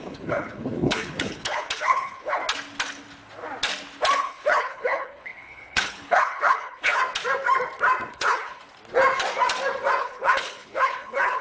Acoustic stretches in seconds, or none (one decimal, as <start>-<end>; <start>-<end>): 2.4-4.2; 7.0-8.1; 8.6-10.0